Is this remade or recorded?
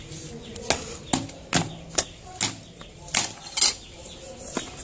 recorded